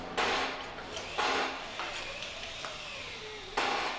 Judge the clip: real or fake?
real